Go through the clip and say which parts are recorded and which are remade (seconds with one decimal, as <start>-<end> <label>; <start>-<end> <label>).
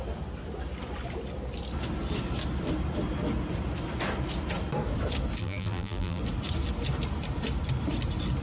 0.0-5.4 recorded; 5.4-6.2 remade; 6.2-8.4 recorded